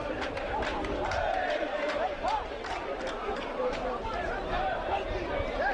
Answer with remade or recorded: remade